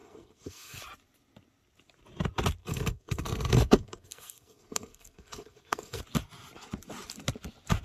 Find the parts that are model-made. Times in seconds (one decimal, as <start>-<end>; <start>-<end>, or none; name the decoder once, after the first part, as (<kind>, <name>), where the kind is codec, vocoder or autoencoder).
0.0-0.8 (codec, SNAC); 2.6-6.0